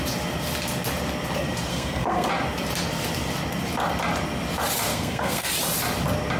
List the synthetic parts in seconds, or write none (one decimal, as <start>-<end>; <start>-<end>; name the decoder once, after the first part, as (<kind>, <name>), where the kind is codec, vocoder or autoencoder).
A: 1.7-2.3 (codec, SNAC); 4.9-5.5